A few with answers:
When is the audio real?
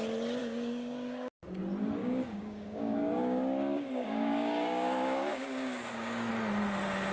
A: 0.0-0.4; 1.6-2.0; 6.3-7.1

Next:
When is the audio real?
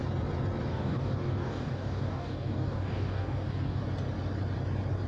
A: 0.0-0.7; 3.8-5.1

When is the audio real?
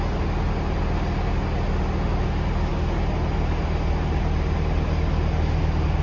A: 0.0-6.0